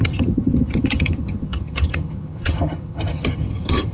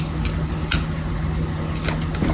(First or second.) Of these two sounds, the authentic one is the second